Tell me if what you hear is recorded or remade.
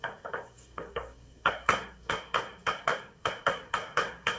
remade